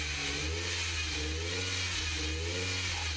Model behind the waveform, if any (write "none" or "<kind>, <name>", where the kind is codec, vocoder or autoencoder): none